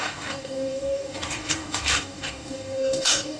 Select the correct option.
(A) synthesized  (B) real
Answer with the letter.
A